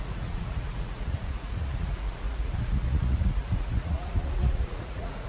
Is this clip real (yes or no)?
no